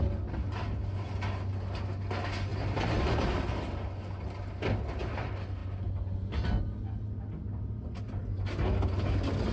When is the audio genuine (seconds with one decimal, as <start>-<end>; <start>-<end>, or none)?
0.0-2.5; 3.5-7.4; 8.2-9.5